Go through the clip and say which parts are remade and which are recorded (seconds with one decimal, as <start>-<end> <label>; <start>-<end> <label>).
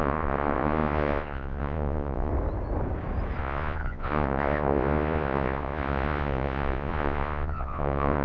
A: 0.0-2.3 remade; 2.3-3.4 recorded; 3.4-8.2 remade